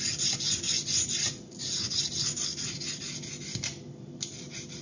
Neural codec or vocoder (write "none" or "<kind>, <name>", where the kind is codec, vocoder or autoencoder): none